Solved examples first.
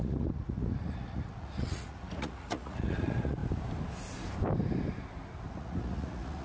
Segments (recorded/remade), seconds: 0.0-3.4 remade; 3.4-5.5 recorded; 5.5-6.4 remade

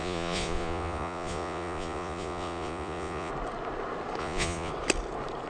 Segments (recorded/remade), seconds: 0.0-3.3 remade; 3.3-4.2 recorded; 4.2-4.7 remade; 4.7-5.5 recorded

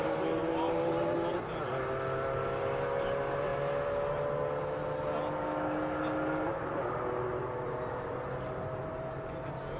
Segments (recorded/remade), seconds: 0.0-9.8 recorded

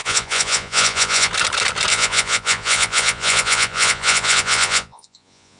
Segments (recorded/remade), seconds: 0.0-1.3 remade; 1.3-1.9 recorded; 1.9-5.6 remade

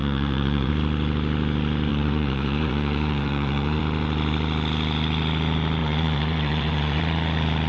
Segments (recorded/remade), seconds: 0.0-0.7 remade; 0.7-1.9 recorded; 1.9-3.8 remade; 3.8-5.8 recorded; 5.8-7.0 remade; 7.0-7.7 recorded

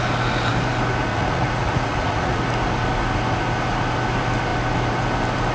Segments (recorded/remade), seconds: 0.0-1.1 recorded; 1.1-2.4 remade; 2.4-5.5 recorded

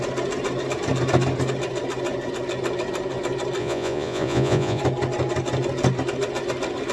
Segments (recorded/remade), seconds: 0.0-3.6 recorded; 3.6-4.8 remade; 4.8-6.9 recorded